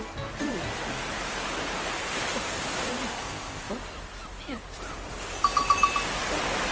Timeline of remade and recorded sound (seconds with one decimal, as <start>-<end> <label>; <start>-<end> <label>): 0.0-3.1 recorded; 3.1-3.7 remade; 3.7-6.7 recorded